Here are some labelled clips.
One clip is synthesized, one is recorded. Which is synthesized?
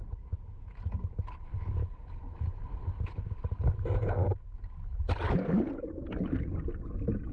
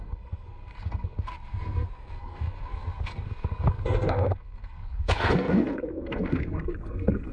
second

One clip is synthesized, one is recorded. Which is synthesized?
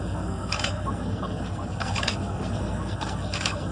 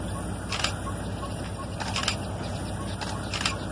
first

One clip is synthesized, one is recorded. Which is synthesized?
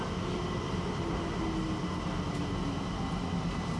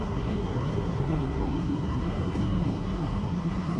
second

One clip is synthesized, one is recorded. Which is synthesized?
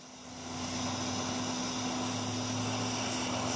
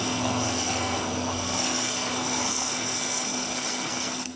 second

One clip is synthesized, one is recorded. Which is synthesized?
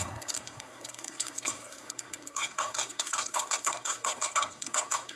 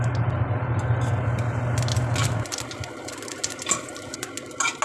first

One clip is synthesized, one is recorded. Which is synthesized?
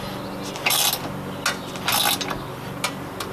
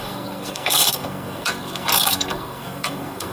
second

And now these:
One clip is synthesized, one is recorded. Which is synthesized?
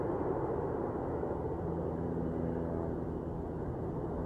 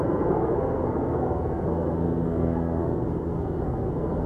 second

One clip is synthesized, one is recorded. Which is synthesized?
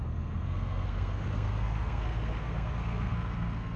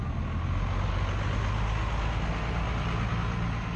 first